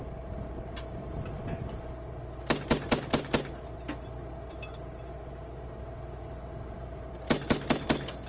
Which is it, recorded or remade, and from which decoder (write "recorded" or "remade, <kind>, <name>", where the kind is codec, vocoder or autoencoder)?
recorded